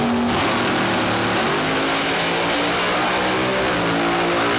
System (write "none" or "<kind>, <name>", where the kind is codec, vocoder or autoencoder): none